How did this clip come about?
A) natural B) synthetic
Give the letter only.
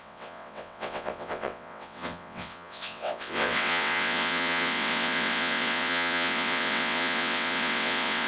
B